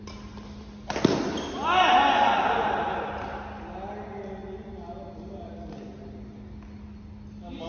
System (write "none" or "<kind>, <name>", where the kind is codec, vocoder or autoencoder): none